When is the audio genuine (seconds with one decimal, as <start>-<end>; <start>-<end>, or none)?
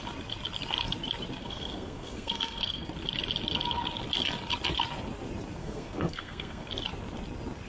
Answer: 0.0-1.4; 2.9-5.6; 6.7-7.7